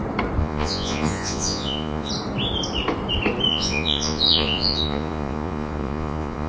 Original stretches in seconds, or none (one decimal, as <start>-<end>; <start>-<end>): 0.0-0.4; 2.1-3.5